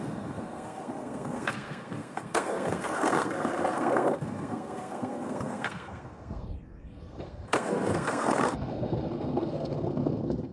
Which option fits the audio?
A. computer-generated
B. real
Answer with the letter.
A